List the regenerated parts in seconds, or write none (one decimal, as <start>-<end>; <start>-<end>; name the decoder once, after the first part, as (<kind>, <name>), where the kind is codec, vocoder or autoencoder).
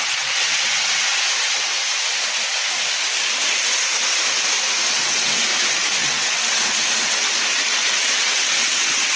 0.0-1.1 (vocoder, WaveNeXt); 4.9-5.5; 6.0-7.2; 8.0-9.2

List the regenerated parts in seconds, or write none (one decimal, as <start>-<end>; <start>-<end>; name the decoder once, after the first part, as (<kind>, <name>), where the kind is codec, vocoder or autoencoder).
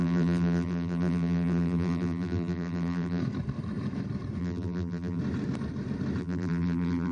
0.0-3.2 (vocoder, BigVGAN v2); 4.4-5.2; 6.2-7.1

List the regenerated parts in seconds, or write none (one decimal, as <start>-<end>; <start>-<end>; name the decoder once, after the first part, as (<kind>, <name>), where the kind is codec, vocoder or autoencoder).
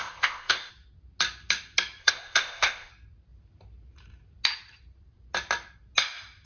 0.0-0.7 (codec, ZipCodec); 2.0-2.9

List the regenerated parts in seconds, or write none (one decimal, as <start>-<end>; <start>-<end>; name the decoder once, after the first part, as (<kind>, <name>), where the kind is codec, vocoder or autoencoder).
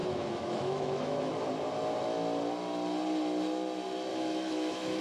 0.0-1.3 (autoencoder, DAC-VAE); 4.1-5.0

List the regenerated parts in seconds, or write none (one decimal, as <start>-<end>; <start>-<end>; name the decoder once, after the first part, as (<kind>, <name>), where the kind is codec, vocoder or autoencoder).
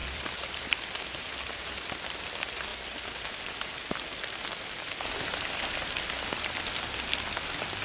0.0-1.2 (vocoder, BigVGAN v2); 2.7-5.1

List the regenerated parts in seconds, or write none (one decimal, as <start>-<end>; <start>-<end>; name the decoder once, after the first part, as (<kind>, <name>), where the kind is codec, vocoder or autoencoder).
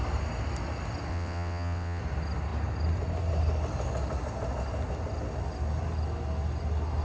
1.1-2.0 (vocoder, WaveNeXt)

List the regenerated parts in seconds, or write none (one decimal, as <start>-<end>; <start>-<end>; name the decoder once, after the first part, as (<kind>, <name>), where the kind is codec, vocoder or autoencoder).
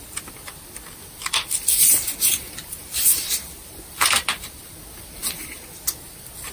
0.0-5.2 (vocoder, BigVGAN v2); 6.0-6.5